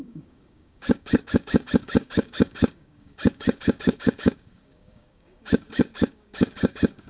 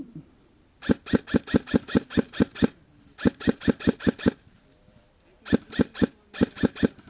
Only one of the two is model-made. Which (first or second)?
first